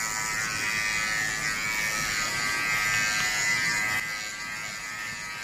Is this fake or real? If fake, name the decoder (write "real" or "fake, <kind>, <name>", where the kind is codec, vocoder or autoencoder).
real